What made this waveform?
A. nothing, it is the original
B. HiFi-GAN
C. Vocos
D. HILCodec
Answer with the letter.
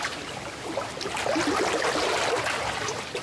A